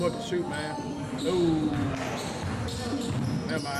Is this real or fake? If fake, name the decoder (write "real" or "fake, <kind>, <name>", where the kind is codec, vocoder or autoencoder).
real